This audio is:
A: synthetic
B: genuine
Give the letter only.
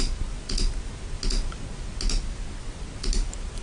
B